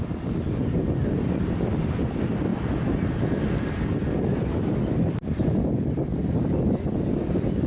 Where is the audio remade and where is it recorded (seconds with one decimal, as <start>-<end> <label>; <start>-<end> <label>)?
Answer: 0.0-7.7 remade